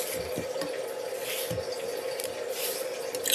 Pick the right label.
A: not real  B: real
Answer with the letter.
B